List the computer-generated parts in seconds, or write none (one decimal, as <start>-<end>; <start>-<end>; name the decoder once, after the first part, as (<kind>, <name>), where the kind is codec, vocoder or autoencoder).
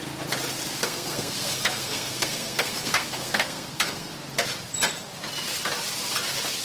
0.8-4.1 (codec, SNAC)